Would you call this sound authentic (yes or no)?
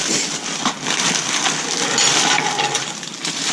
yes